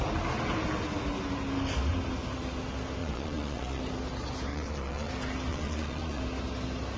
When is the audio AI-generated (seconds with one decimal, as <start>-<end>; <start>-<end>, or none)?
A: 3.0-3.8; 4.5-5.1; 5.5-6.2